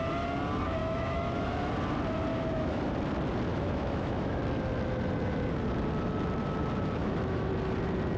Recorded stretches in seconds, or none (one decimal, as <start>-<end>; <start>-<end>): 0.0-0.8; 1.7-2.3; 2.8-3.5; 4.4-7.0; 7.5-8.2